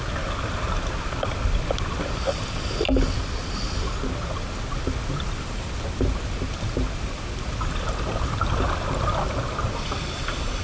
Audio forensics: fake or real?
real